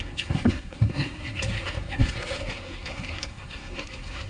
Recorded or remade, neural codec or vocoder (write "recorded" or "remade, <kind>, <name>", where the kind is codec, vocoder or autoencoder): remade, codec, SNAC